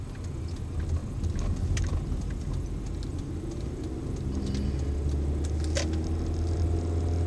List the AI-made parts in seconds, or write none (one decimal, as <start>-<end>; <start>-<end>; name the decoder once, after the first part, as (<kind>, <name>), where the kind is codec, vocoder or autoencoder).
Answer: none